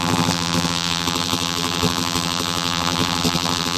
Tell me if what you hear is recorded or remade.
remade